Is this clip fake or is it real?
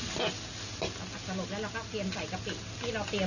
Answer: real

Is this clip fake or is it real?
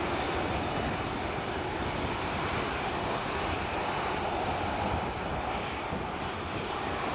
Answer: real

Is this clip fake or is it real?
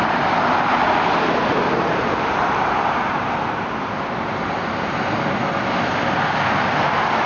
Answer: real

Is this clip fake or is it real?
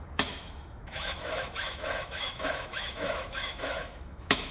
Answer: fake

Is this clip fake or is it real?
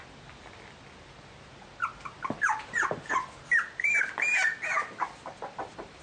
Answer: real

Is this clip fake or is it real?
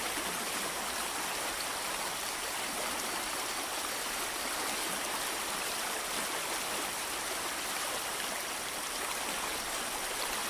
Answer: real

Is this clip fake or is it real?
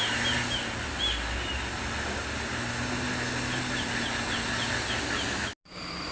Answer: real